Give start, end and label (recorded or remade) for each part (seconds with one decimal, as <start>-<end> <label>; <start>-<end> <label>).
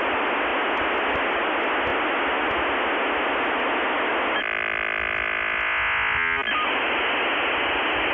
0.0-8.1 recorded